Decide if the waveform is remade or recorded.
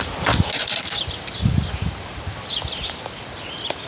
recorded